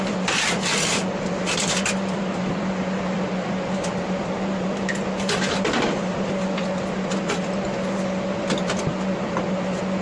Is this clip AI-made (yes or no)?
no